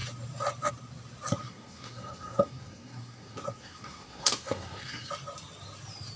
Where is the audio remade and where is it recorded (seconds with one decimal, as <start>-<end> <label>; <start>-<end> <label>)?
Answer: 0.0-1.4 recorded; 1.4-5.1 remade; 5.1-6.2 recorded